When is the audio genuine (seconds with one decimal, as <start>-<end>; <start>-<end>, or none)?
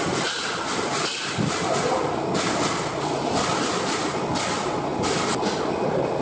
0.0-6.2